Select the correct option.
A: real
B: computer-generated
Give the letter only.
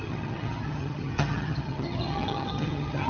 B